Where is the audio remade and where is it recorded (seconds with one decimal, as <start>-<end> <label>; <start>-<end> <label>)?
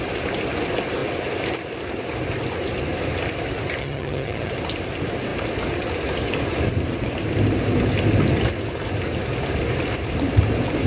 0.0-3.8 recorded; 3.8-4.5 remade; 4.5-10.9 recorded